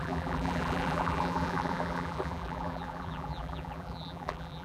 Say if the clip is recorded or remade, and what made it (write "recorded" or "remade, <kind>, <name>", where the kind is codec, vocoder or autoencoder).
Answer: remade, vocoder, BigVGAN v2